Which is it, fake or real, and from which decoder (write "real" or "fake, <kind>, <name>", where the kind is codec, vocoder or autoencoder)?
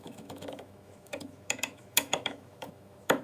fake, autoencoder, DAC-VAE